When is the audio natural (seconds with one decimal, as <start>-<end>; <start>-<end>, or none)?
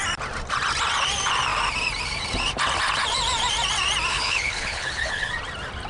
0.0-4.1; 5.3-5.9